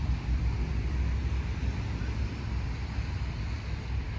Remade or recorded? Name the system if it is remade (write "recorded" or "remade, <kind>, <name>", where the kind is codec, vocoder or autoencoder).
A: recorded